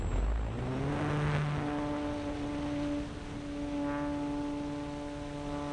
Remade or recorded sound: recorded